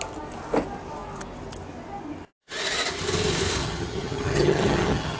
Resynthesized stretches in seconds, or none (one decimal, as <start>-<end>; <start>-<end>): 3.6-5.2